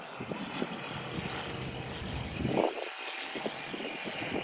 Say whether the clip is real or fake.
real